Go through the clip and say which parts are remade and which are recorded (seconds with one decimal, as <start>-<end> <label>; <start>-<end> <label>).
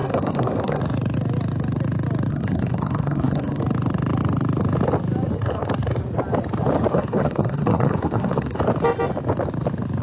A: 0.0-0.8 remade; 0.8-2.3 recorded; 2.3-3.6 remade; 3.6-6.9 recorded; 6.9-8.6 remade; 8.6-10.0 recorded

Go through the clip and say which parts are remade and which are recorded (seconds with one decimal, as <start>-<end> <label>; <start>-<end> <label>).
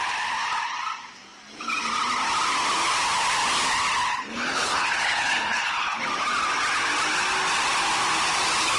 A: 0.0-4.2 recorded; 4.2-6.0 remade; 6.0-8.8 recorded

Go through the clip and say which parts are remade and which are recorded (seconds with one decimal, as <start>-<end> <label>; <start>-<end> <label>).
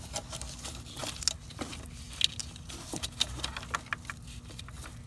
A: 0.0-5.1 recorded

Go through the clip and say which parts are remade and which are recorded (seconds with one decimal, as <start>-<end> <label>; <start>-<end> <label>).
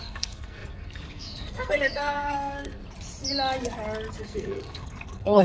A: 0.0-2.8 remade; 2.8-4.2 recorded; 4.2-5.4 remade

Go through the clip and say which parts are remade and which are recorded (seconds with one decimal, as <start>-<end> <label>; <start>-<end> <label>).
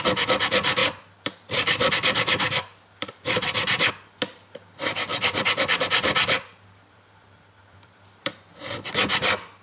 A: 0.0-0.8 recorded; 0.8-3.9 remade; 3.9-5.1 recorded; 5.1-8.3 remade; 8.3-9.6 recorded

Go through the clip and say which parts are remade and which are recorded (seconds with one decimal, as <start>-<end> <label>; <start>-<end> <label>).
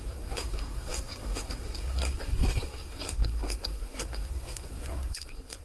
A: 0.0-5.6 remade